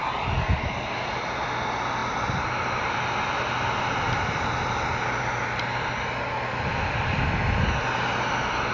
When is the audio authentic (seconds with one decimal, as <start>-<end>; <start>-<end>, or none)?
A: 0.0-8.7